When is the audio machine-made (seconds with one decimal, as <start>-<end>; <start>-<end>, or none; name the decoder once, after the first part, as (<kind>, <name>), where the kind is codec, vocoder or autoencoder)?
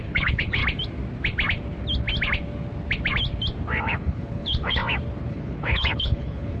0.0-0.6 (codec, HILCodec); 3.8-4.8; 5.3-6.6